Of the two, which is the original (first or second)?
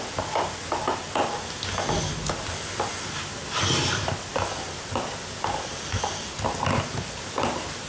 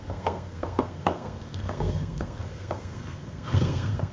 first